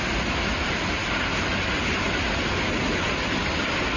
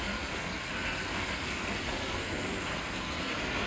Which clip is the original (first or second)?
first